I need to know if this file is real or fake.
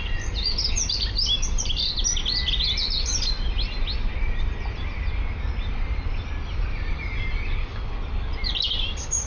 real